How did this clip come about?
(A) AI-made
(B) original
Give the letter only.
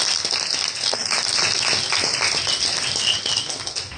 B